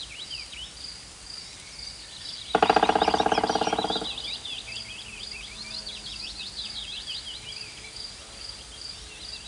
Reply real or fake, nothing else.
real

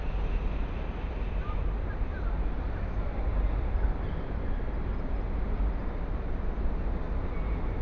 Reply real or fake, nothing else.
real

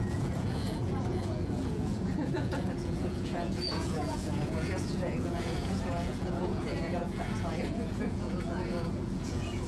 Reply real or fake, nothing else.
fake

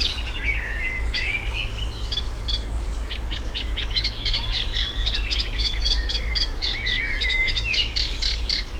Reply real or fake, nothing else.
fake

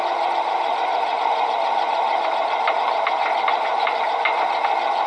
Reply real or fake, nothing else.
real